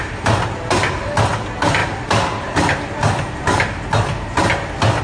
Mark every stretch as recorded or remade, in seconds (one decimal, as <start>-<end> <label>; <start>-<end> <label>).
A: 0.0-5.0 recorded